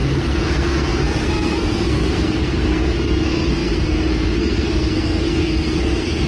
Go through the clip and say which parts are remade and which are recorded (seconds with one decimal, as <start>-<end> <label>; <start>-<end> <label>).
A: 0.0-6.3 remade